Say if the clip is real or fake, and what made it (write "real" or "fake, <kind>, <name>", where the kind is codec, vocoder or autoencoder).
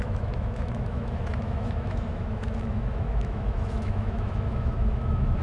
fake, autoencoder, DAC-VAE